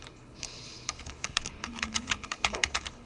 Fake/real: fake